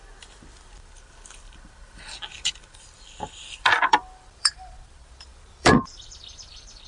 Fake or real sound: fake